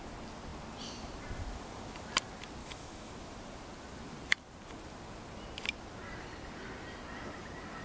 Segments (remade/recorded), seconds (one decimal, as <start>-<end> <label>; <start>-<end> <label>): 0.0-2.6 recorded; 2.6-3.1 remade; 3.1-7.8 recorded